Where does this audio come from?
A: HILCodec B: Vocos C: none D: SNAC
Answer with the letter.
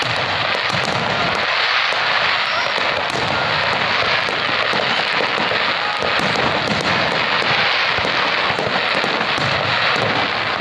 C